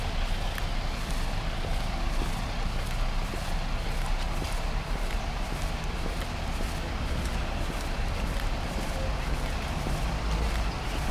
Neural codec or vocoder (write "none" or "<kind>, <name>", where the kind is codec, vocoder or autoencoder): none